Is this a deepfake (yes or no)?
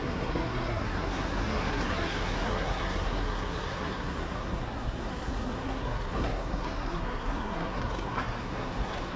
yes